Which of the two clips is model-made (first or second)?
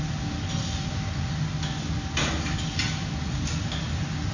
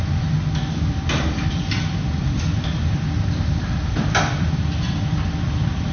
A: second